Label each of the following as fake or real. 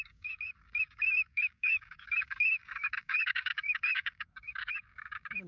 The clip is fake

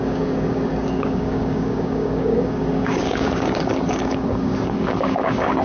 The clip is fake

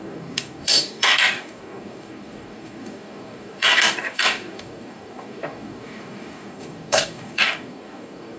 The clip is fake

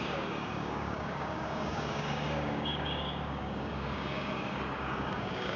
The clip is fake